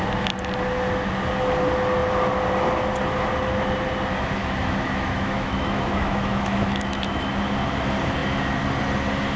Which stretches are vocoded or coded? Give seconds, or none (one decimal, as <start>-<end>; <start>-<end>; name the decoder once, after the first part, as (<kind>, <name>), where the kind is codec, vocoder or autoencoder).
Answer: 4.4-7.3 (autoencoder, DAC-VAE)